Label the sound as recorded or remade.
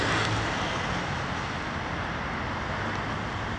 recorded